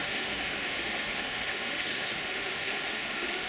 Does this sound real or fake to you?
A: fake